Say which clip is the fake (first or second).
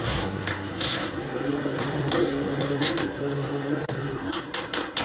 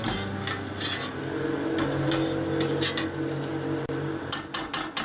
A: first